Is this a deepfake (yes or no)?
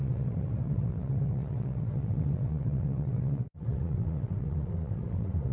yes